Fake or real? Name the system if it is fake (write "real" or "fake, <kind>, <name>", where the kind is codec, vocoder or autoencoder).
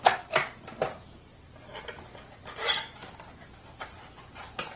real